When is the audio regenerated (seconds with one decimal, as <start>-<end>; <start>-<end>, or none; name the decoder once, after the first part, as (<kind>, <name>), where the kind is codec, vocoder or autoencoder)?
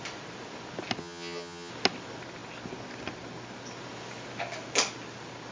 1.0-1.7 (vocoder, HiFi-GAN)